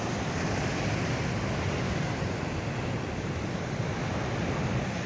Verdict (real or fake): real